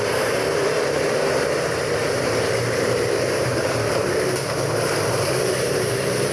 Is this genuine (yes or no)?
no